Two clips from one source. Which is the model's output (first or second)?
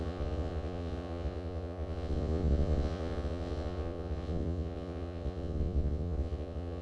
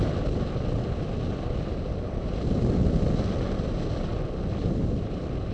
first